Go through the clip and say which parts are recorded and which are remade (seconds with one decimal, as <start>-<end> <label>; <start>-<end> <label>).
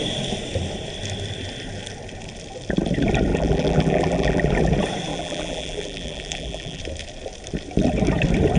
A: 0.0-3.3 recorded; 3.3-4.5 remade; 4.5-5.1 recorded; 5.1-6.8 remade; 6.8-8.6 recorded